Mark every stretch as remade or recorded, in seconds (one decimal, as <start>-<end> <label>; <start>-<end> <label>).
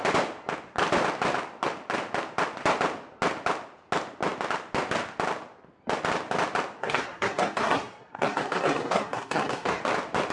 0.0-6.8 recorded; 6.8-9.8 remade; 9.8-10.3 recorded